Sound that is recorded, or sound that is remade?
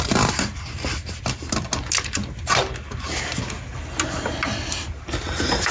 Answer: recorded